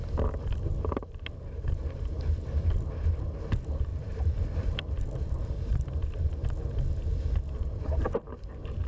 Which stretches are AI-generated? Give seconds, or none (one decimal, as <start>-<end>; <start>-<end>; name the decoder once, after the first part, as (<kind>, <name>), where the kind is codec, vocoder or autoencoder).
3.9-4.9 (vocoder, BigVGAN v2)